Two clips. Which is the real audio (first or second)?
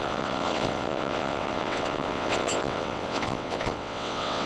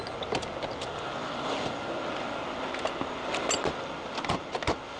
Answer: second